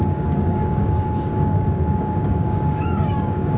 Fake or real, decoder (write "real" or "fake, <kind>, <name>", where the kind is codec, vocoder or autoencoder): fake, codec, DAC